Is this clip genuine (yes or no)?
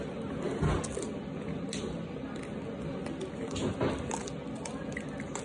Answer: yes